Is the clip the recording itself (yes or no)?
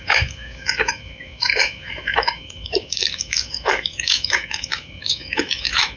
no